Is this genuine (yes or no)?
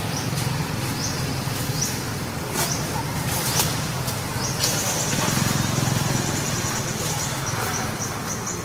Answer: yes